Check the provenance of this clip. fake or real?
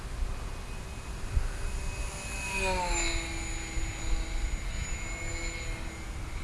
real